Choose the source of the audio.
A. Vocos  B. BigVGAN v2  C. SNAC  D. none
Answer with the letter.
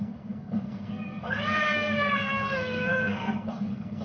C